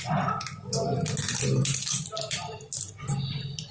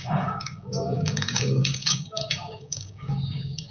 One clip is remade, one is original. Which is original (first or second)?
first